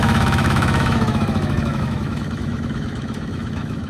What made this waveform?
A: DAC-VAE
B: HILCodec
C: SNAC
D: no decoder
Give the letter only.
A